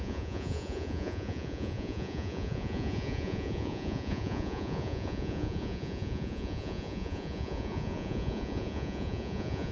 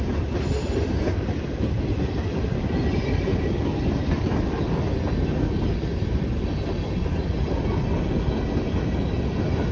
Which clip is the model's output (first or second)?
first